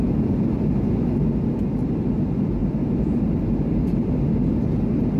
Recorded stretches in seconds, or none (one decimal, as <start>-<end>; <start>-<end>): 0.0-2.6; 3.4-5.2